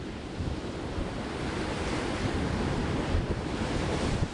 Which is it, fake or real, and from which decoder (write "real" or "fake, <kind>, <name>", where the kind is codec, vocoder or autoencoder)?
fake, vocoder, BigVGAN v2